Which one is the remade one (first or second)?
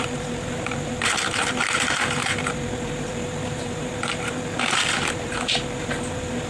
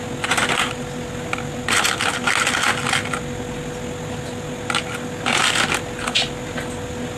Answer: first